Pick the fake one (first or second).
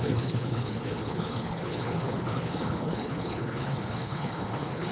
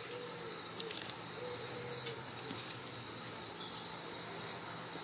first